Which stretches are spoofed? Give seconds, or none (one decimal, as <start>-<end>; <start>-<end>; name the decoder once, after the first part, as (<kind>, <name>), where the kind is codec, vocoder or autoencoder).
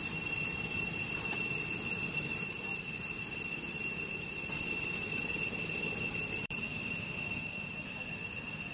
0.0-8.7 (vocoder, BigVGAN v2)